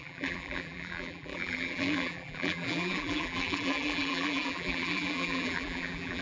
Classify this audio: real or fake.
fake